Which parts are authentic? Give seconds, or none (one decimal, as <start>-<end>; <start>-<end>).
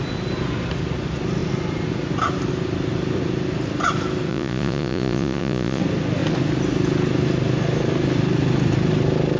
0.0-4.3; 5.8-9.4